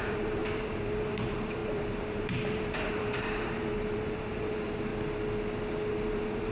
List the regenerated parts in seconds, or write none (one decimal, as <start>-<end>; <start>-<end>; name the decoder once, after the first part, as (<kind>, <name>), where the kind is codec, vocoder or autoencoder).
0.0-4.9 (vocoder, BigVGAN v2); 5.9-6.5